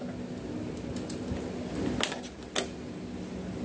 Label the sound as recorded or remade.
recorded